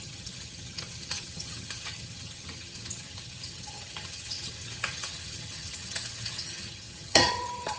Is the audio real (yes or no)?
no